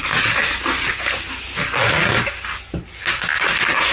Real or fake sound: real